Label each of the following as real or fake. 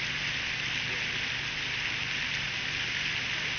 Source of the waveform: real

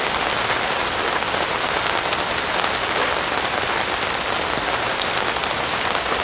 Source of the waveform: fake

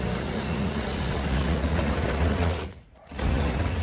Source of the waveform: fake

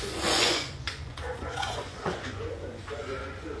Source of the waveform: fake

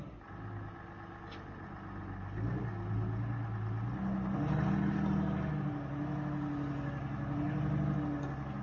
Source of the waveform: real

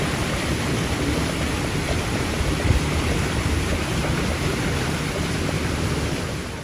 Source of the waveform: real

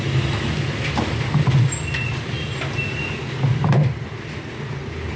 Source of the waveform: real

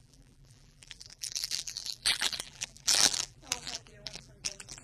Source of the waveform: fake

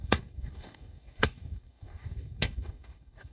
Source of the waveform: fake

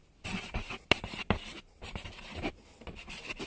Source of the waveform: real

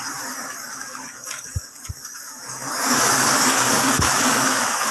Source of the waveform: fake